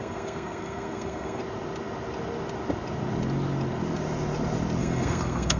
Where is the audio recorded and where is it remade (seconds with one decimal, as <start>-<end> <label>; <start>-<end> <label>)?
0.0-1.4 remade; 1.4-4.8 recorded; 4.8-5.6 remade